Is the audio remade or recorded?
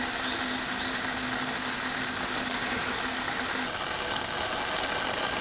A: recorded